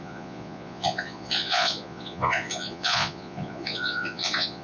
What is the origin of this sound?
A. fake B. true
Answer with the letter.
A